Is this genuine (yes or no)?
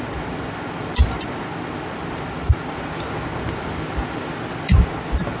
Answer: yes